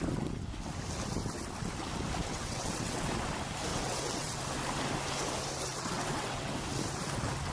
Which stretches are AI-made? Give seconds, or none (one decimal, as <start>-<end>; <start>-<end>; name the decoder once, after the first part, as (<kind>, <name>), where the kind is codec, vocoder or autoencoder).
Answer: 2.3-3.1 (vocoder, WaveNeXt); 3.7-4.4; 5.7-6.5